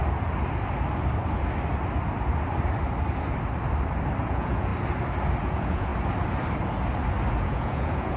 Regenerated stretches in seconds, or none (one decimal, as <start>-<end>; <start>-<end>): 4.2-4.7; 5.4-5.9; 7.3-8.2